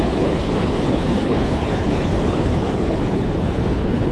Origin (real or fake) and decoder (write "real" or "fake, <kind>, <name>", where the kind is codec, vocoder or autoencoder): fake, codec, HILCodec